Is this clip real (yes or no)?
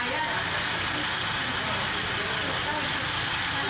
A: yes